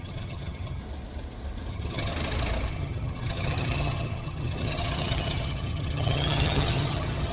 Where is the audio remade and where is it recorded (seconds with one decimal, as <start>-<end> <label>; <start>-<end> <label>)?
0.0-0.8 remade; 0.8-1.7 recorded; 1.7-2.1 remade; 2.1-2.7 recorded; 2.7-7.3 remade

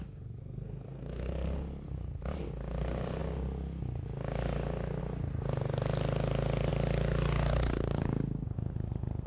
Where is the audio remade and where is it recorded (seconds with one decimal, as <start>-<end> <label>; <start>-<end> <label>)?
0.0-0.4 recorded; 0.4-1.3 remade; 1.3-9.3 recorded

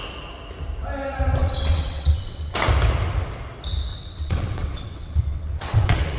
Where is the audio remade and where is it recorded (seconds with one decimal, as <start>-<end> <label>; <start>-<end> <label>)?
0.0-1.4 recorded; 1.4-2.7 remade; 2.7-3.9 recorded; 3.9-6.2 remade

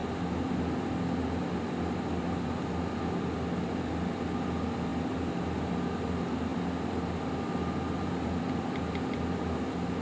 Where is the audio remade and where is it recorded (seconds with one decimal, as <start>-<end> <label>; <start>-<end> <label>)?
0.0-10.0 recorded